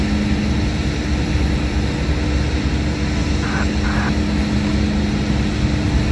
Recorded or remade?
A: recorded